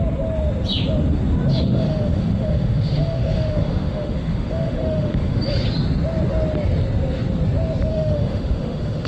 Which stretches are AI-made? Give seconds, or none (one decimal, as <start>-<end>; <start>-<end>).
1.5-5.4; 7.9-9.1